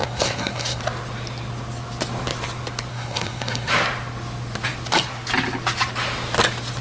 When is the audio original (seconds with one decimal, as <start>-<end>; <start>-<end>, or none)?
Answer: 0.8-2.9; 3.7-6.8